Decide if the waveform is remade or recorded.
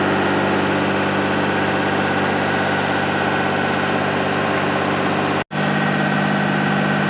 recorded